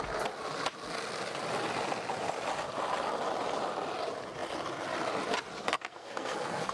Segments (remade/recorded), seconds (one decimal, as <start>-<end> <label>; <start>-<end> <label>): 0.0-5.6 recorded; 5.6-6.7 remade